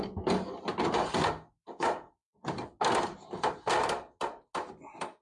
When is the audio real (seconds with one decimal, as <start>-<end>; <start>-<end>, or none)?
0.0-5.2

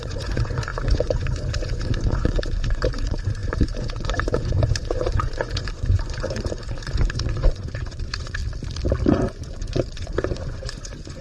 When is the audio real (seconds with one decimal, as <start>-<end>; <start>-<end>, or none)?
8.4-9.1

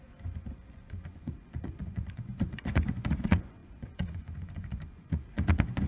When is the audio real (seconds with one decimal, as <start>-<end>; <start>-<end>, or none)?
none

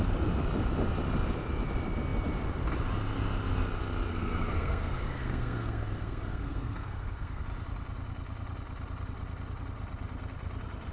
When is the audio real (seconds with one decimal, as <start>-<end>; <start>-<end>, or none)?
0.0-4.1; 7.4-10.9